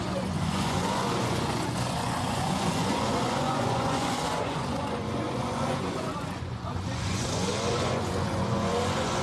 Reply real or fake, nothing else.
fake